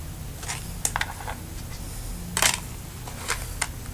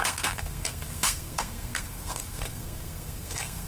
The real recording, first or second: first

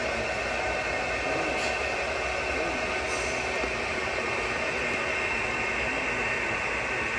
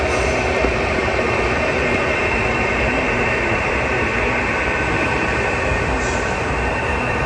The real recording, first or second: first